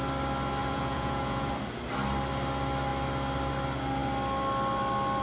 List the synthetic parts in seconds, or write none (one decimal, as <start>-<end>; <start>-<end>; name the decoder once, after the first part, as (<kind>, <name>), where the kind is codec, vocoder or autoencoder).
0.6-1.5 (vocoder, Vocos)